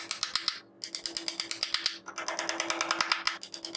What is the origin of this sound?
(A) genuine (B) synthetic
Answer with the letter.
A